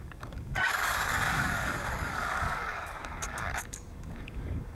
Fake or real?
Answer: fake